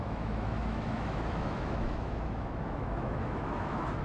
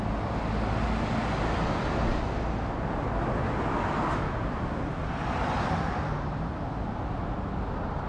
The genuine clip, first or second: second